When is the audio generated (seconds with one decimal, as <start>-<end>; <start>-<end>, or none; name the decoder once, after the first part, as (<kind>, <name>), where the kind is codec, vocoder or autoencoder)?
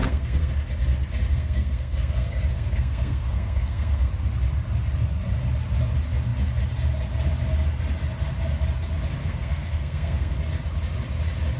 0.0-0.5 (codec, SNAC); 1.3-4.1; 9.2-10.3